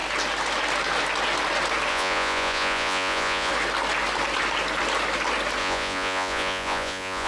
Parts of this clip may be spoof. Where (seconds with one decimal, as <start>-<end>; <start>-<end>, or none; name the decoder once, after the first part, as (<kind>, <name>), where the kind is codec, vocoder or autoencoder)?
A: 1.9-3.5 (vocoder, Vocos); 5.6-7.3